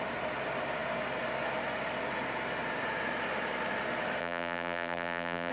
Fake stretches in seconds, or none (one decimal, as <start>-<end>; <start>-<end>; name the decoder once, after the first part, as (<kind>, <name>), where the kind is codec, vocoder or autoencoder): 4.2-5.5 (vocoder, BigVGAN v2)